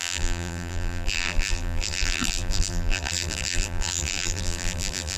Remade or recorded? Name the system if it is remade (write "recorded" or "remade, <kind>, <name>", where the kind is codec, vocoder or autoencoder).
remade, vocoder, BigVGAN v2